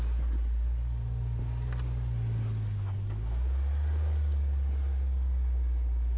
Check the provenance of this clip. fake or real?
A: real